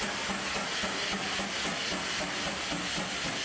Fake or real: real